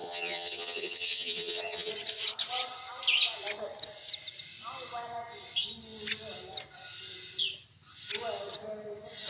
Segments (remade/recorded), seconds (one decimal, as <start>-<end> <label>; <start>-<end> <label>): 0.0-1.9 remade; 1.9-9.3 recorded